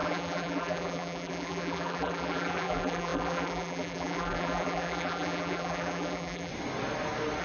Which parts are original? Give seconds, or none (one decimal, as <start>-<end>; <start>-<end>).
6.5-7.4